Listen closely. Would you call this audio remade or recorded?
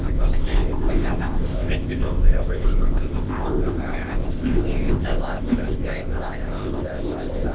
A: remade